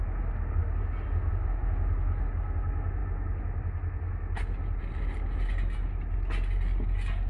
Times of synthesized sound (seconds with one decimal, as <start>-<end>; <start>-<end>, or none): none